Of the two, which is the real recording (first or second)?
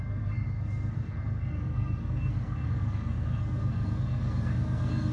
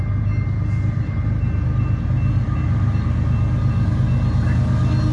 second